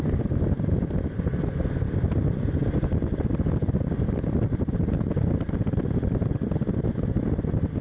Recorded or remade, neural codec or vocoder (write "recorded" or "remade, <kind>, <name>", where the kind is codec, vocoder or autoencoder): recorded